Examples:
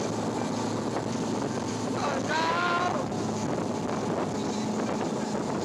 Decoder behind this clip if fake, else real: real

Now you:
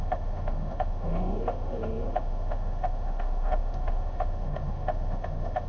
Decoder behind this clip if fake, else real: fake, autoencoder, DAC-VAE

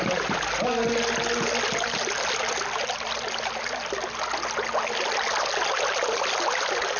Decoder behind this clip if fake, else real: real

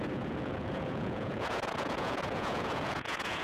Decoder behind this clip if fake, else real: fake, vocoder, Vocos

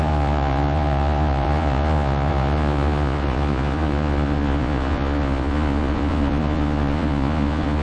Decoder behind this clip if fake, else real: fake, vocoder, Vocos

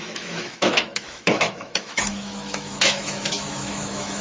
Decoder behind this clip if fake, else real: fake, autoencoder, DAC-VAE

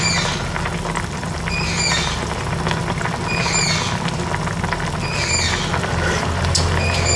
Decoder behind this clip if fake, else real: real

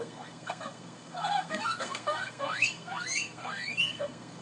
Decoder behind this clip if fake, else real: fake, codec, SNAC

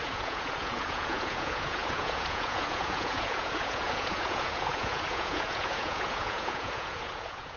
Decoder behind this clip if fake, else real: fake, vocoder, Vocos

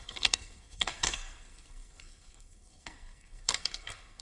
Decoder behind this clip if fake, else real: fake, codec, SNAC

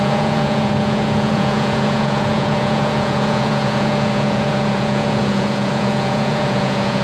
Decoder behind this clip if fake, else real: fake, vocoder, Vocos